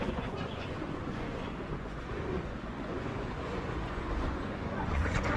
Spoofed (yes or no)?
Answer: yes